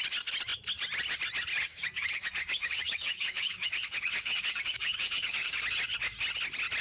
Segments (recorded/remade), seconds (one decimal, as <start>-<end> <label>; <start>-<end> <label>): 0.0-1.5 recorded; 1.5-5.6 remade; 5.6-6.8 recorded